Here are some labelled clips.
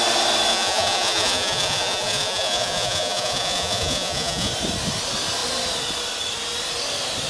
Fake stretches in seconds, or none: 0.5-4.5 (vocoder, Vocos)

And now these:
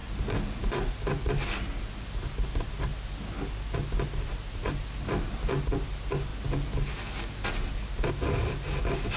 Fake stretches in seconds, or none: none

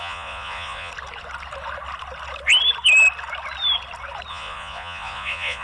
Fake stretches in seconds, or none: 0.0-0.9 (vocoder, Vocos); 4.3-5.6

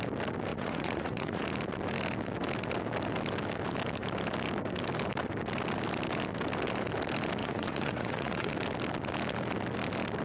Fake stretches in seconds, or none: 0.5-1.4 (vocoder, Vocos); 7.4-8.5

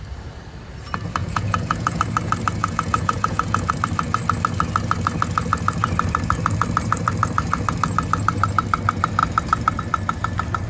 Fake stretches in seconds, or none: 1.2-2.0 (vocoder, Vocos); 2.6-3.7

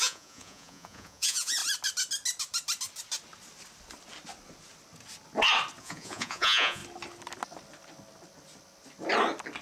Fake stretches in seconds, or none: 0.0-1.6 (vocoder, Vocos); 5.8-6.8